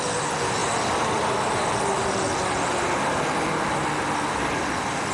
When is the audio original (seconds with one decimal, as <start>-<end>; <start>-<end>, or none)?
0.0-5.1

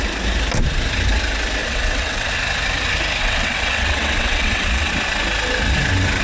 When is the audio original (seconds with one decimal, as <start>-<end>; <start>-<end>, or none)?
0.0-1.6; 2.3-3.2; 4.9-6.2

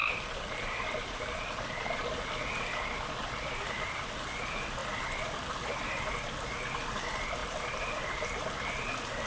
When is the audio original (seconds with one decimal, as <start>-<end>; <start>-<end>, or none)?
2.1-4.8; 6.0-7.4; 8.5-9.3

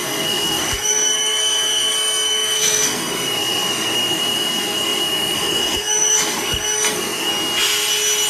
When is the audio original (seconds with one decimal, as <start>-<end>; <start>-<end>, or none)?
7.3-8.3

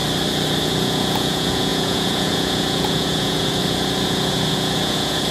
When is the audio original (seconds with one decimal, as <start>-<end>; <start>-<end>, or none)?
0.0-0.6